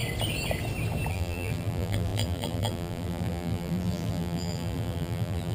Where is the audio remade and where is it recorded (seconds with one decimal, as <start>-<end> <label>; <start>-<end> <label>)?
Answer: 0.0-1.1 recorded; 1.1-5.5 remade